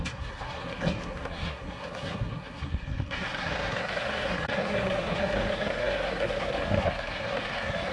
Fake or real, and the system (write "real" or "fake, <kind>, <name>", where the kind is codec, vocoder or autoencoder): fake, codec, SNAC